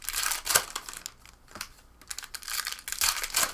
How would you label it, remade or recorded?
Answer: recorded